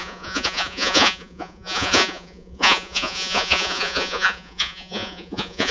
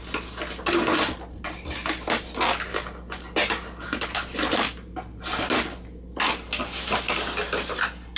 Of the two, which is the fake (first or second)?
first